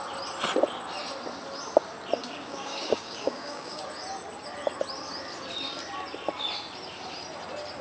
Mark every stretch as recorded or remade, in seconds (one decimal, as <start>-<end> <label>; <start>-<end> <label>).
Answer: 0.0-2.2 recorded; 2.2-3.8 remade; 3.8-7.8 recorded